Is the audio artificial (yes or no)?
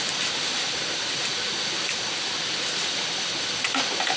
no